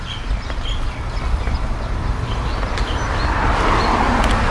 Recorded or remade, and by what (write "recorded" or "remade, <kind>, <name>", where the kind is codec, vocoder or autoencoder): recorded